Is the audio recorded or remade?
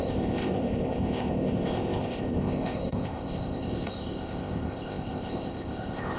remade